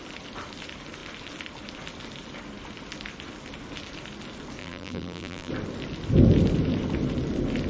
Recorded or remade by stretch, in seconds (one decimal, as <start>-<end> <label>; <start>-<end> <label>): 0.0-4.6 recorded; 4.6-5.5 remade; 5.5-7.7 recorded